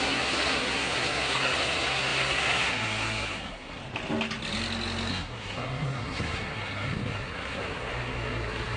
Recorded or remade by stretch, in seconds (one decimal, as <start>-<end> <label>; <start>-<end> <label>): 0.0-3.8 remade; 3.8-5.1 recorded; 5.1-8.8 remade